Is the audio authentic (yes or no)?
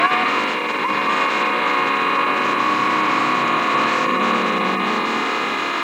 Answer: yes